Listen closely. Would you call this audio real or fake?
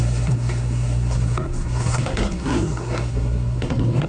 fake